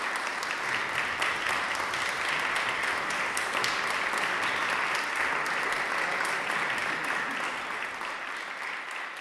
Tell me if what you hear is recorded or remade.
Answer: recorded